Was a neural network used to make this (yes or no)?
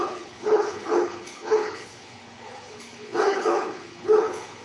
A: yes